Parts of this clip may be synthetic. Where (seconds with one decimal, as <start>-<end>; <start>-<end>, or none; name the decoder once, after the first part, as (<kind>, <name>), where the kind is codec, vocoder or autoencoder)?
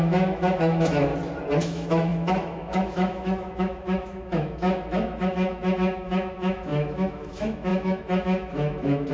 0.0-1.1 (autoencoder, DAC-VAE); 1.6-9.1